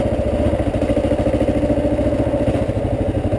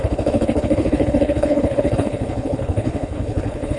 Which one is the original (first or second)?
first